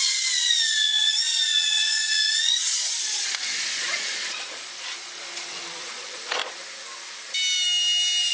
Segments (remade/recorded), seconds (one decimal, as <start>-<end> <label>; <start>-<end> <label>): 0.0-6.4 remade; 6.4-8.3 recorded